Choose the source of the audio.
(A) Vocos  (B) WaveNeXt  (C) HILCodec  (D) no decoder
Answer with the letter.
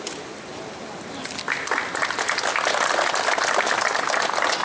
D